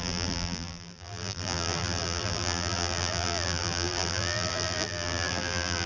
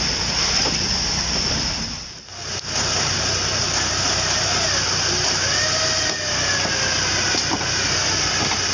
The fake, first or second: first